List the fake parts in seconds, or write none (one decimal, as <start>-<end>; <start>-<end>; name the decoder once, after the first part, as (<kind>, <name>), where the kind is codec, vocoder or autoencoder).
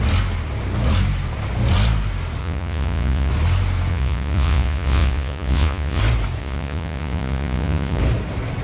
2.4-3.3 (vocoder, Vocos); 3.9-6.0; 6.4-8.0